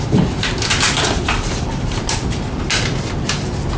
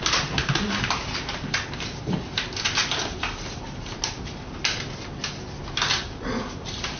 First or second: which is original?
second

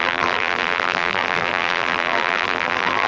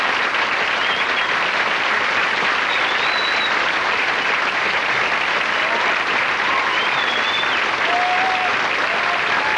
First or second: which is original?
second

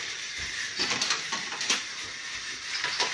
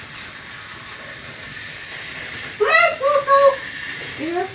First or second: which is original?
second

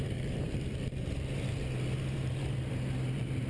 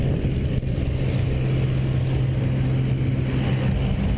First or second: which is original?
second